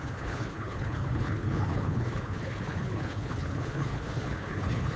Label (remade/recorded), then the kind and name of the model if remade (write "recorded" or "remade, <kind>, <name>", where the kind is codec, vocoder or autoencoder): remade, codec, HILCodec